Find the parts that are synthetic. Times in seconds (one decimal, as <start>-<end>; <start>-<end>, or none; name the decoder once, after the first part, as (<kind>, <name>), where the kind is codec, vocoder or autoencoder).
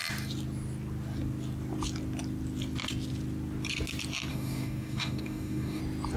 4.3-5.8 (codec, DAC)